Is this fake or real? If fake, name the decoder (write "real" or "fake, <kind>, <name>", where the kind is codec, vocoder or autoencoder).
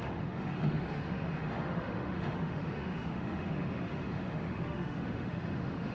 fake, autoencoder, DAC-VAE